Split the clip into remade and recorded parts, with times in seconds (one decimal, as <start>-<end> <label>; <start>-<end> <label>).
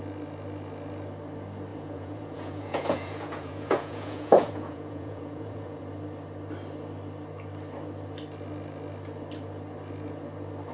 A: 0.0-1.7 recorded; 1.7-5.8 remade; 5.8-10.7 recorded